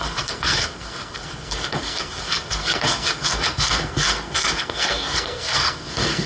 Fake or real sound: fake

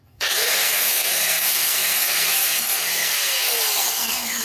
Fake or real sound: fake